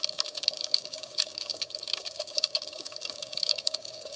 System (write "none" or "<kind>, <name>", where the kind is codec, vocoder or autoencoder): codec, DAC